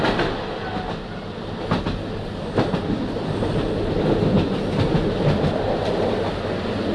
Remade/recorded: recorded